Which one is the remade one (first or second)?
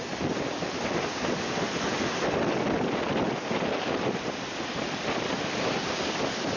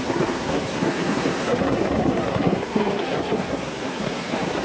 second